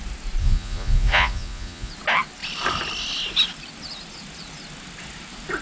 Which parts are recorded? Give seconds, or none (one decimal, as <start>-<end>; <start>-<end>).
0.0-0.4; 1.9-5.6